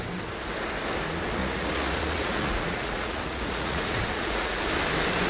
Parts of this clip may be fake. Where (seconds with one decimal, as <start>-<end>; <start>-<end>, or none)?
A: 1.4-4.6